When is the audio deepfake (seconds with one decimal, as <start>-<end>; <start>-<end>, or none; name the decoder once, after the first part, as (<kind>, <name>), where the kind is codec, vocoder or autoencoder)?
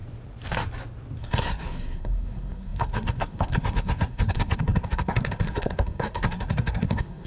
1.2-7.3 (codec, SNAC)